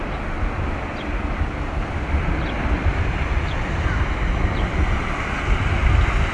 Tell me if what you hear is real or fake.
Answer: real